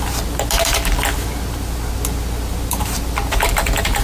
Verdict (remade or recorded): recorded